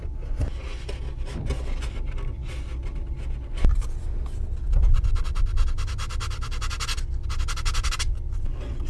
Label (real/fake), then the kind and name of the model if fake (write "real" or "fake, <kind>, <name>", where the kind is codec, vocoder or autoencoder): real